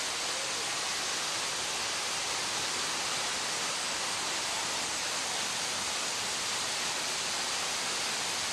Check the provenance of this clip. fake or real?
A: real